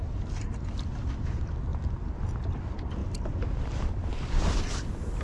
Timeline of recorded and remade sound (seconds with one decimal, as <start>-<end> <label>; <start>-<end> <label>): 0.0-1.7 recorded; 1.7-2.3 remade; 2.3-3.0 recorded; 3.0-3.6 remade; 3.6-4.1 recorded; 4.1-5.2 remade